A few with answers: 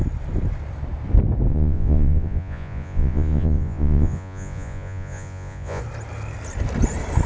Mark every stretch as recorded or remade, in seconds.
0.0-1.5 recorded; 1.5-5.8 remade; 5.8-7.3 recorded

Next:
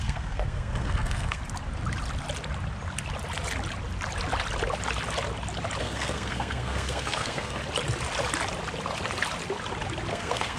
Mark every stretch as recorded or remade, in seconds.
0.0-1.4 remade; 1.4-5.8 recorded; 5.8-7.6 remade; 7.6-10.1 recorded; 10.1-10.6 remade